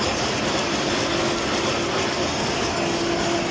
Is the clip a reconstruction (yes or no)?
no